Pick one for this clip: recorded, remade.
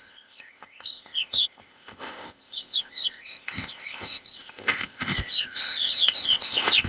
remade